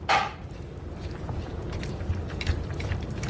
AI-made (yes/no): yes